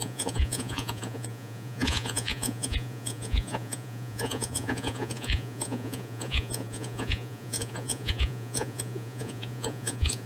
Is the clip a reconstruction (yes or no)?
yes